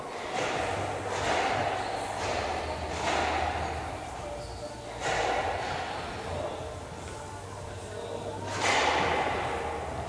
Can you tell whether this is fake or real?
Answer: real